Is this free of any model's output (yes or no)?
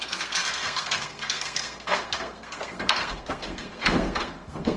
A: no